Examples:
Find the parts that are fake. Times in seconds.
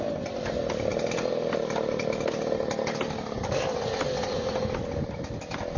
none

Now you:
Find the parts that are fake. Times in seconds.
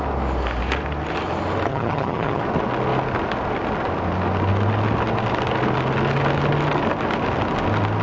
1.7-2.4 (vocoder, HiFi-GAN)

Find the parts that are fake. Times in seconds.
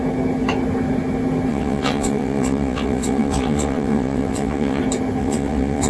1.5-4.8 (vocoder, WaveNeXt); 5.2-5.9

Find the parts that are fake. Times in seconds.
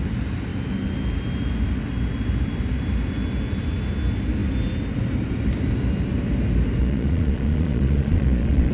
6.8-8.7 (vocoder, Vocos)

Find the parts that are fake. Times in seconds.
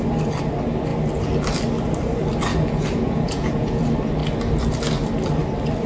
2.5-3.8 (vocoder, Vocos)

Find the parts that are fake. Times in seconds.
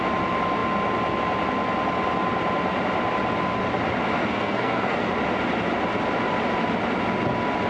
4.2-5.1 (codec, SNAC)